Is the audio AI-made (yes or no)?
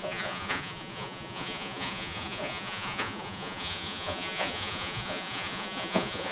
yes